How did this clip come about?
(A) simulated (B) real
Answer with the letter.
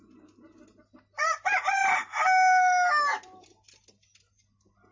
B